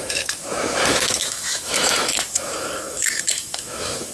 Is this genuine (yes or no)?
no